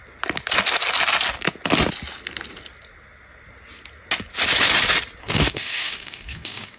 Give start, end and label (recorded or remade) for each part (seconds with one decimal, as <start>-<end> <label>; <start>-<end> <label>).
0.0-5.2 recorded; 5.2-6.8 remade